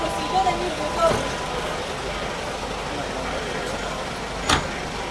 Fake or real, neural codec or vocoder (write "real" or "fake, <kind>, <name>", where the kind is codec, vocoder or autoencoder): real